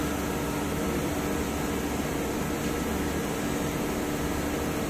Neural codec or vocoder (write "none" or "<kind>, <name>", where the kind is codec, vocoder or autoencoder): none